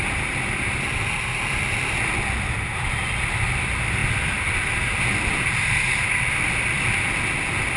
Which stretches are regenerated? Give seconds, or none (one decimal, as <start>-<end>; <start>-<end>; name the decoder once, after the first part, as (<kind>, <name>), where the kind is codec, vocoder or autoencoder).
none